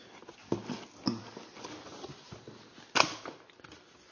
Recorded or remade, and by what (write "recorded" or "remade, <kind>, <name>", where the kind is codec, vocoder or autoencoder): recorded